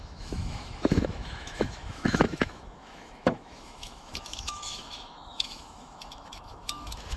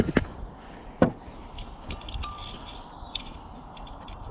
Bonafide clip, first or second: second